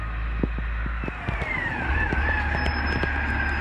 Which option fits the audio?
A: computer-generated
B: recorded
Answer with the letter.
B